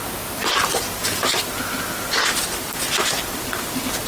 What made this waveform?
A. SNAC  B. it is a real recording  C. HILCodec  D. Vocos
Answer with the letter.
B